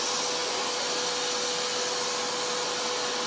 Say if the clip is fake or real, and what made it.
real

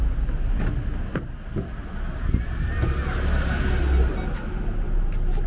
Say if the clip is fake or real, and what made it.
real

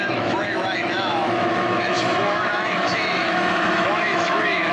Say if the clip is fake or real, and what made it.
fake, autoencoder, DAC-VAE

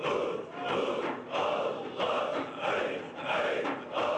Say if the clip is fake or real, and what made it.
real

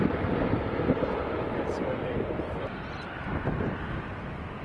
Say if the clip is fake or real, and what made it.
real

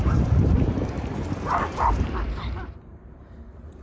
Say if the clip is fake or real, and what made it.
fake, vocoder, BigVGAN v2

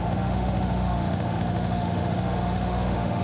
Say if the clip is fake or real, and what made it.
fake, autoencoder, DAC-VAE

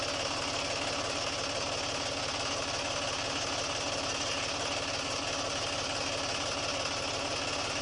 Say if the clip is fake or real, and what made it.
real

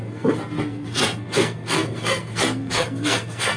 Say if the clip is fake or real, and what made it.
fake, codec, SNAC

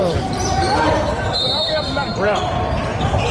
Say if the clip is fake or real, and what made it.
fake, vocoder, BigVGAN v2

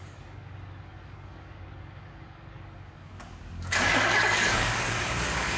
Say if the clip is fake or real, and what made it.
fake, codec, DAC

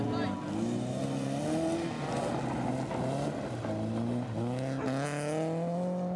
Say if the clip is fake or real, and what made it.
real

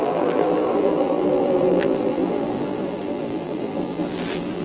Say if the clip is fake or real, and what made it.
fake, vocoder, BigVGAN v2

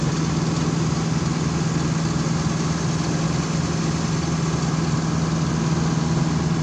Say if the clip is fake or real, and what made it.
real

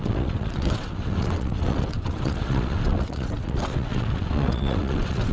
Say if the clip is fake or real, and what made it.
fake, vocoder, WaveNeXt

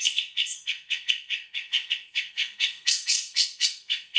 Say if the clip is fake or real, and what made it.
fake, codec, SNAC